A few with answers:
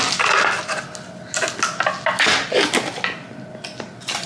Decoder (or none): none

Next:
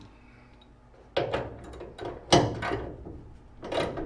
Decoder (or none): none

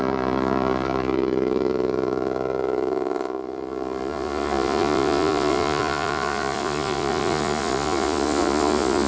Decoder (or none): vocoder, Vocos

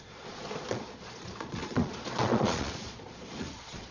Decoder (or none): vocoder, Vocos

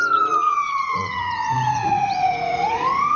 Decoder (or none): vocoder, Vocos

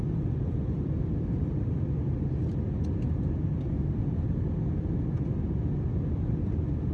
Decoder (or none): none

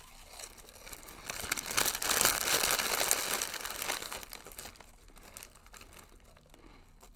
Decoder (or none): none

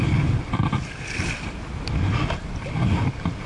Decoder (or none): none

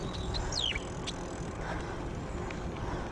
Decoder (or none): none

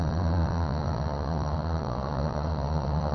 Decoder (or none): vocoder, Vocos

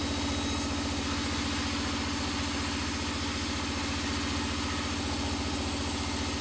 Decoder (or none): none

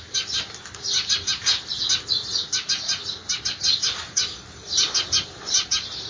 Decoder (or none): none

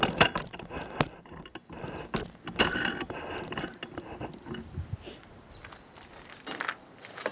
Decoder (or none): none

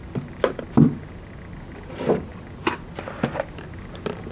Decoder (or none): none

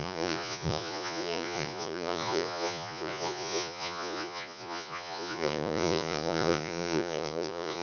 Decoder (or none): vocoder, Vocos